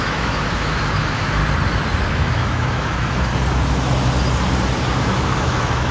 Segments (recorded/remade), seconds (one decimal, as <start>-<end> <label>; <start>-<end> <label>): 0.0-1.4 remade; 1.4-2.1 recorded; 2.1-3.3 remade; 3.3-4.8 recorded; 4.8-5.9 remade